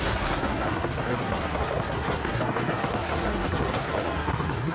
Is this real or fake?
fake